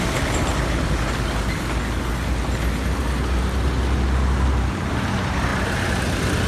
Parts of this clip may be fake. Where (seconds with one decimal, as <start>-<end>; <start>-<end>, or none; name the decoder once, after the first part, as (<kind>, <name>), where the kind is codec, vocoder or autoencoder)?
none